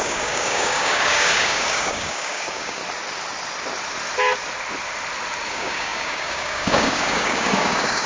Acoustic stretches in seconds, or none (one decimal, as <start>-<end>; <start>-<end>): 2.8-5.5